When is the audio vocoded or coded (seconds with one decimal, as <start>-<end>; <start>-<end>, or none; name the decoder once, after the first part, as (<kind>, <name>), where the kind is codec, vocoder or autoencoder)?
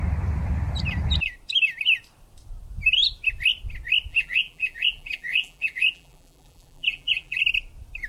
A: 4.1-7.4 (vocoder, BigVGAN v2)